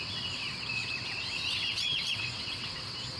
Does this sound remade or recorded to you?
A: remade